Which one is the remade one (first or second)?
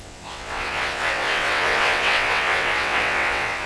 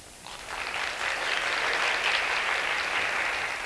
first